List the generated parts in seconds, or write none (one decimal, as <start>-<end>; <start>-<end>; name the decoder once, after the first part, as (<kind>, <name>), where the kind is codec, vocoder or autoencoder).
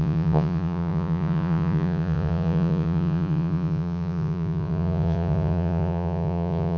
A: 0.0-6.8 (vocoder, Vocos)